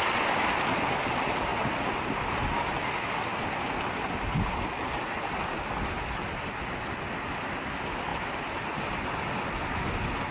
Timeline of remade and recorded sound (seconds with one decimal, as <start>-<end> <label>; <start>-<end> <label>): 0.0-10.3 recorded

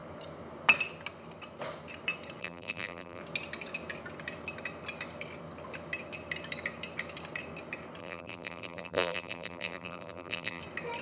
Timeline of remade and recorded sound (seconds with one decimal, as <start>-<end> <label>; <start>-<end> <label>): 0.0-2.4 recorded; 2.4-3.2 remade; 3.2-8.0 recorded; 8.0-10.6 remade; 10.6-11.0 recorded

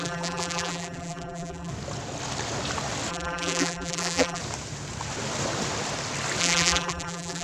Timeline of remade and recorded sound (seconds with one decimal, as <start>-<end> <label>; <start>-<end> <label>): 0.0-1.7 remade; 1.7-3.1 recorded; 3.1-4.4 remade; 4.4-6.4 recorded; 6.4-7.4 remade

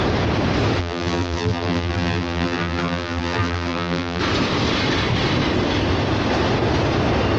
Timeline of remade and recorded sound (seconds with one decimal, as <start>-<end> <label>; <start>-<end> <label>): 0.0-0.8 recorded; 0.8-4.2 remade; 4.2-7.4 recorded

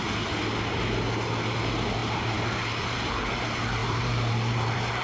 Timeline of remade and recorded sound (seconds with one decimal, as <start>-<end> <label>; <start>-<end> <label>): 0.0-2.0 recorded; 2.0-3.3 remade; 3.3-3.8 recorded; 3.8-5.0 remade

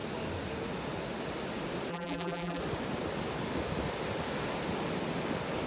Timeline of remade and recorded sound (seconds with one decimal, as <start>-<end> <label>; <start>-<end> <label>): 0.0-1.9 recorded; 1.9-2.6 remade; 2.6-5.7 recorded

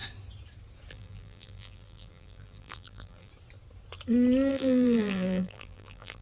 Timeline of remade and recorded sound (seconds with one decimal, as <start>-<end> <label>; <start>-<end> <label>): 0.0-0.9 recorded; 0.9-3.3 remade; 3.3-4.5 recorded; 4.5-6.2 remade